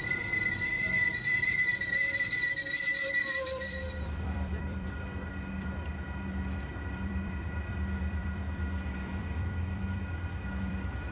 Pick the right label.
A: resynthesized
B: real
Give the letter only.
A